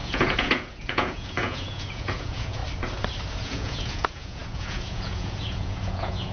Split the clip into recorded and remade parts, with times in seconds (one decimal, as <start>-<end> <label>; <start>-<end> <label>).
0.0-2.6 remade; 2.6-3.3 recorded; 3.3-6.3 remade